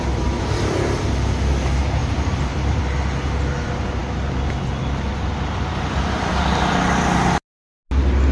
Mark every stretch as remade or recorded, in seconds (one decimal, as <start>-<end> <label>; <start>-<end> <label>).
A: 0.0-2.0 recorded; 2.0-2.8 remade; 2.8-8.3 recorded